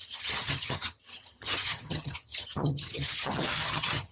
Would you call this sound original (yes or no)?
no